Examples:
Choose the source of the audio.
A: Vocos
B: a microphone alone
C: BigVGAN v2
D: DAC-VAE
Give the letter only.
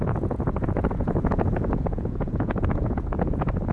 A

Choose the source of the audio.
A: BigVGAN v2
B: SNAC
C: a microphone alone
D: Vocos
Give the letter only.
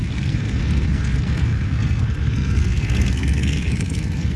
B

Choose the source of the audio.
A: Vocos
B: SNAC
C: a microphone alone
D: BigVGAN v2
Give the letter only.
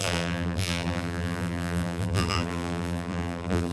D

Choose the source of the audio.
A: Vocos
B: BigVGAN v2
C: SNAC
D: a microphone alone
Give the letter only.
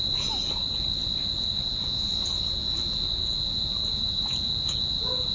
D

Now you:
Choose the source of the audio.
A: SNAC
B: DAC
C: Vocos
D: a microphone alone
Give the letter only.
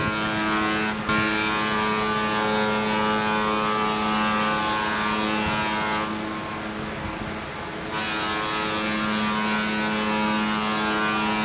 D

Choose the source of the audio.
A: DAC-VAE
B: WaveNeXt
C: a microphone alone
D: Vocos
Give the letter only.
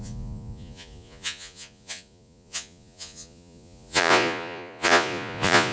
D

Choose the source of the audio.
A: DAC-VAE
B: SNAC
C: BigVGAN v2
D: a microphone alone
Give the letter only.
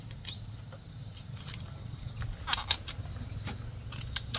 D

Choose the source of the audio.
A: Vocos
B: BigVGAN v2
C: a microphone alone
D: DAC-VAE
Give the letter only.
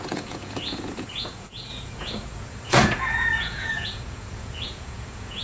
A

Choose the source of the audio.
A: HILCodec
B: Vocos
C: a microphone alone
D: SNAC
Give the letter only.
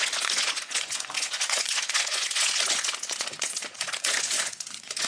B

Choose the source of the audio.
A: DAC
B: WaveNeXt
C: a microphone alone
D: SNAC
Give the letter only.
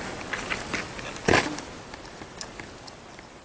C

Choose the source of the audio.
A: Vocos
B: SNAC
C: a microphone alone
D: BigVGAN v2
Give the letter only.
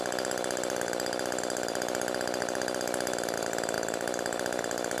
C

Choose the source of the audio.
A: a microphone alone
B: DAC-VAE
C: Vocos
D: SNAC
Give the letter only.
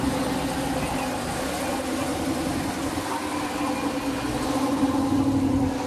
A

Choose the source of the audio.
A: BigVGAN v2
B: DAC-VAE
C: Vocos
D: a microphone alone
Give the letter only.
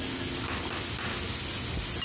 D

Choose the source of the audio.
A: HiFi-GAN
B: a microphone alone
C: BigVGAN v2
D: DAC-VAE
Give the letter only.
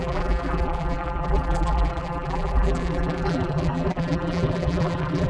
C